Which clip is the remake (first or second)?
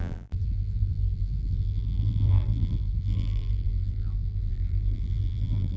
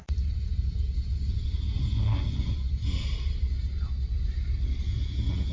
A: first